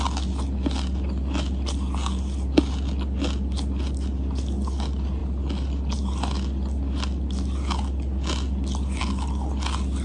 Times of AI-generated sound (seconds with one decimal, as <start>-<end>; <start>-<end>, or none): none